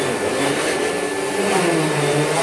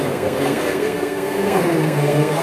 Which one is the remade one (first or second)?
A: second